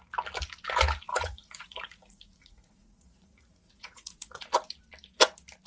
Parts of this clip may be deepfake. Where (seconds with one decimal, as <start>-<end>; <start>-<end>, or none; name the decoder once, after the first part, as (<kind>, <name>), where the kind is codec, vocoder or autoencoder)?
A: 1.1-4.5 (vocoder, Vocos)